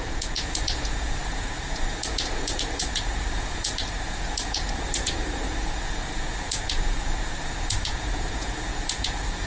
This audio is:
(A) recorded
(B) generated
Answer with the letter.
B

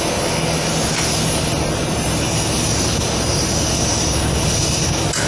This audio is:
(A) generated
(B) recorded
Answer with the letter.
B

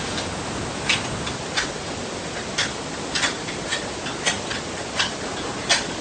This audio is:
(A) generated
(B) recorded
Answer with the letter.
B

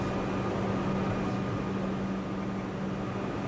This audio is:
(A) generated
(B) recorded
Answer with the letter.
B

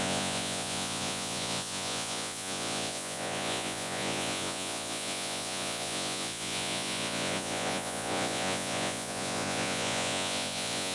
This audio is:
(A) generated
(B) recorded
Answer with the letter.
A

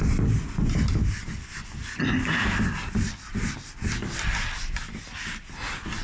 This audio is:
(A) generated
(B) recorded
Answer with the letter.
B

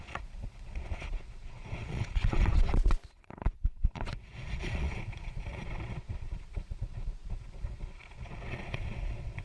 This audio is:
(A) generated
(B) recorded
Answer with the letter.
A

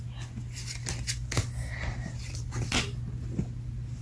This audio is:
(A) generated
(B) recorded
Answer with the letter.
B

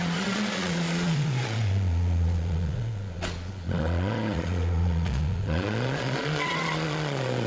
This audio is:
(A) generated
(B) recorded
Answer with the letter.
A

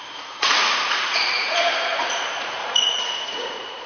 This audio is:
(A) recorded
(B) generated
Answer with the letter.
B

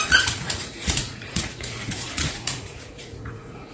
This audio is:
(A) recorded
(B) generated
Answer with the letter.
B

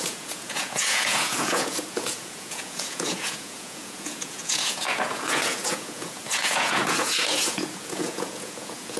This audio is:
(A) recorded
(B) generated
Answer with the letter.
B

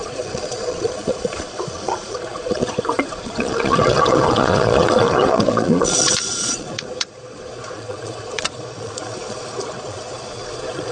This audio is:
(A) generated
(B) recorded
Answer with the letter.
A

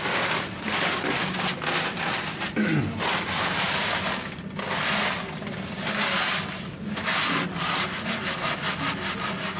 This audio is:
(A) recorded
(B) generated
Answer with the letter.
A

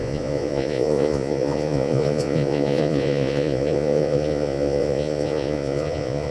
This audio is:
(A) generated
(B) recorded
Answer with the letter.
A